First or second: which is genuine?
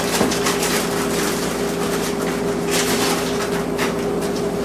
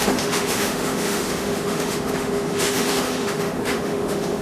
first